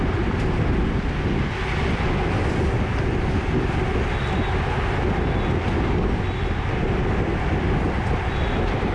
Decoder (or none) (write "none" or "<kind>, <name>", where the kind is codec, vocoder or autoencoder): none